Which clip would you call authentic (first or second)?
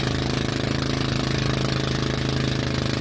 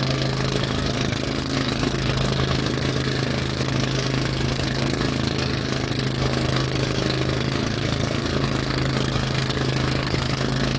first